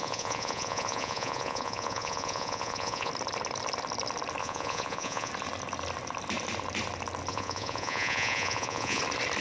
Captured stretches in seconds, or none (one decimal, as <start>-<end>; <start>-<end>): 3.1-4.4; 5.3-7.3; 9.0-9.4